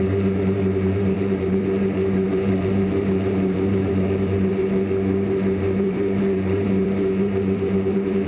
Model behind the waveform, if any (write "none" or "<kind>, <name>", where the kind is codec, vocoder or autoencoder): vocoder, BigVGAN v2